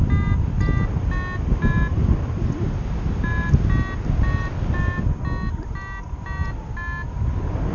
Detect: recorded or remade recorded